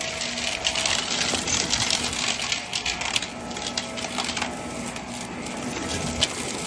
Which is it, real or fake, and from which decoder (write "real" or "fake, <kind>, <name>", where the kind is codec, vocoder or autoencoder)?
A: real